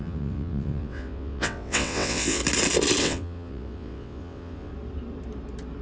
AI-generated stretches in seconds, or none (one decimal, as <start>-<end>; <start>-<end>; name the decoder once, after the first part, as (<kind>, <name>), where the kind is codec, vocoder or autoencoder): 0.0-2.4 (vocoder, WaveNeXt); 3.0-4.7